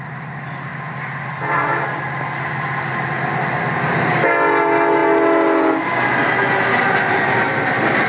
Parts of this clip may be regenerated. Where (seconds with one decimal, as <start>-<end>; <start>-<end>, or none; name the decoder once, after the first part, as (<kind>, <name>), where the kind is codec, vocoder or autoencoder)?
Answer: none